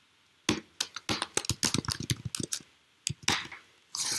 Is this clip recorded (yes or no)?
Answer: yes